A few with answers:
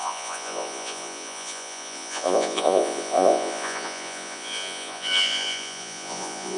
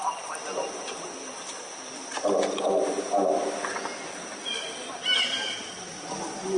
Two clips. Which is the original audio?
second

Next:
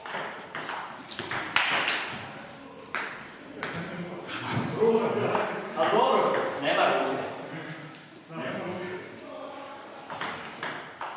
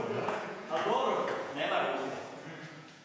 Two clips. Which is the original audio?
first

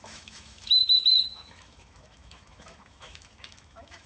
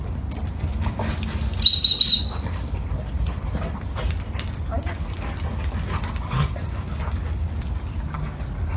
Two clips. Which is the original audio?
second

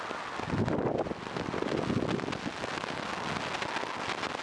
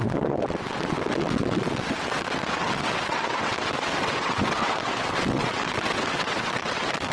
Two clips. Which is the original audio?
first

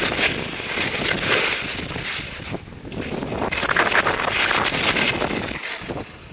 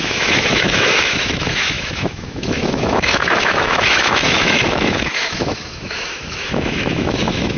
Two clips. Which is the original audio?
first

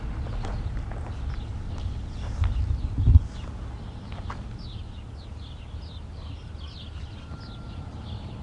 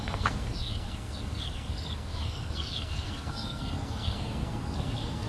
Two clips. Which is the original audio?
first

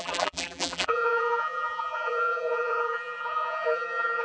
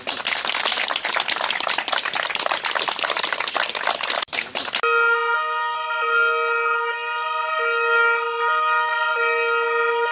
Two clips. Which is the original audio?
second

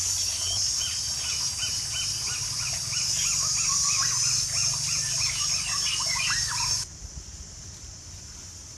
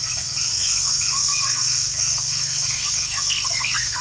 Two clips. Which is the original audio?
first